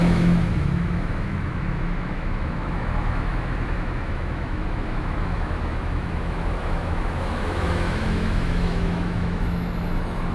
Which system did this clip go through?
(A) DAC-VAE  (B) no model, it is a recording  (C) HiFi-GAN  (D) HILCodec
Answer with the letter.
A